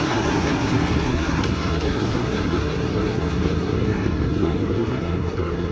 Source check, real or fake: fake